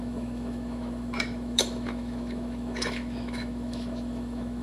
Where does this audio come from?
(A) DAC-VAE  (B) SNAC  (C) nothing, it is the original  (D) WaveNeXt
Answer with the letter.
A